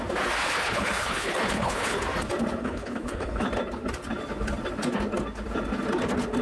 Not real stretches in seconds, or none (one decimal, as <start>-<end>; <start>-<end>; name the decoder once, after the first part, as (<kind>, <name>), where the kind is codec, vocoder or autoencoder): 0.4-2.0 (codec, HILCodec); 2.6-3.5